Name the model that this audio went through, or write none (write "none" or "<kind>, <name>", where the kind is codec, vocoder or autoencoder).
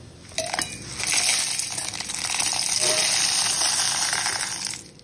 none